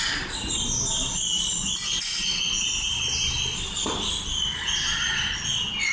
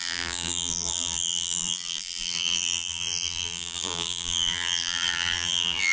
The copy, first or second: second